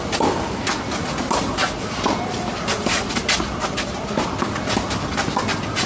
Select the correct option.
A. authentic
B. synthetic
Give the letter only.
A